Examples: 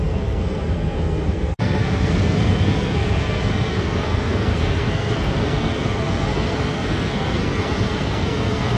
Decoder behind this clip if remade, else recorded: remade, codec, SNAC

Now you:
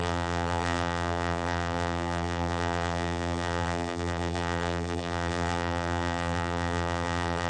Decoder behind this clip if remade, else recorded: remade, vocoder, BigVGAN v2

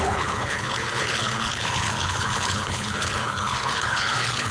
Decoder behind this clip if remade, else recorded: remade, codec, HILCodec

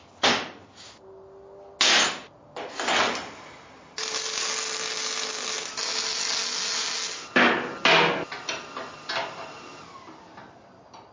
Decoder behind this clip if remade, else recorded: recorded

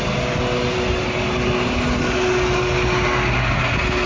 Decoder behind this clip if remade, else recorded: recorded